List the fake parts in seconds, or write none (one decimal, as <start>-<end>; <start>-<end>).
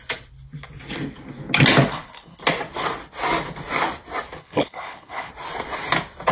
1.9-2.4; 4.4-5.3